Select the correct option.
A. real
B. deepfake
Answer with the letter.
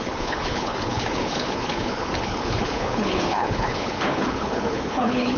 B